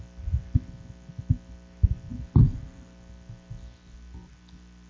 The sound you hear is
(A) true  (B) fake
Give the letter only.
A